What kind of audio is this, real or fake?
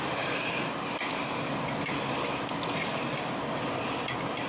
real